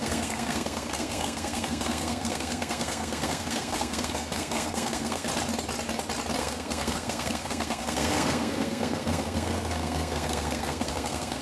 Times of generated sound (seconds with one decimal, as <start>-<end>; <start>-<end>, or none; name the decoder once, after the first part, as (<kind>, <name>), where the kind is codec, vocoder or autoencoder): 0.0-5.3 (codec, SNAC); 6.4-11.4